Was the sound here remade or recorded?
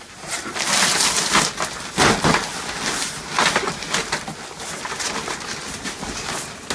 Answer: recorded